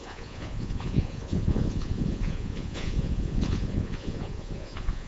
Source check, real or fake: fake